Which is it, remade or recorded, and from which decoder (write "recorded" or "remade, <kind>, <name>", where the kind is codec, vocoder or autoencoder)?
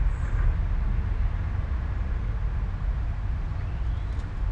recorded